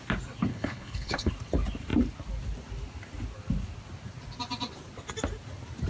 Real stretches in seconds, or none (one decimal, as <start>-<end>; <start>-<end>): 0.0-0.5; 1.3-5.9